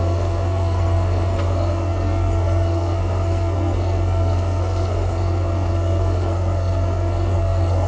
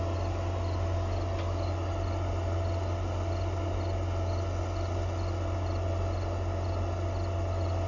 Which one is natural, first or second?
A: second